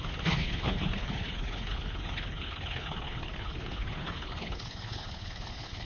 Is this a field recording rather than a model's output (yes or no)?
no